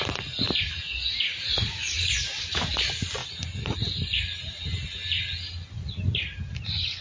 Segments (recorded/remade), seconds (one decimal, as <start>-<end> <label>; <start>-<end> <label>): 0.0-1.3 recorded; 1.3-2.1 remade; 2.1-7.0 recorded